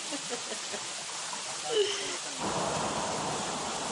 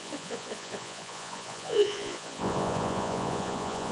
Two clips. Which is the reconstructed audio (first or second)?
second